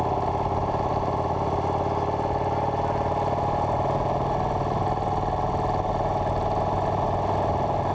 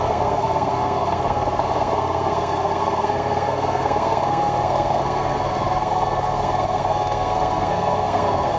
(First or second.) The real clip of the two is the first